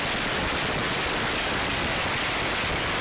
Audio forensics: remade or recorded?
recorded